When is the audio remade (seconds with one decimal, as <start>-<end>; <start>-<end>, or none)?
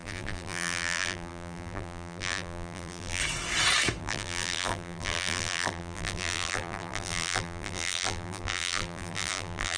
0.0-3.2; 4.0-9.8